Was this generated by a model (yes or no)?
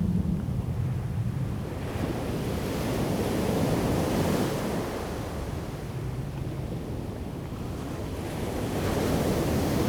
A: no